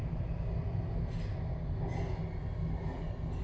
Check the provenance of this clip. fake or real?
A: real